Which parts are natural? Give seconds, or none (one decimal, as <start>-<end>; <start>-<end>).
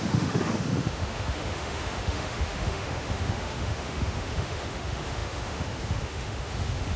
none